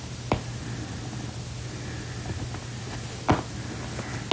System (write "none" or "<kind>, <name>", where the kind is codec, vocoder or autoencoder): none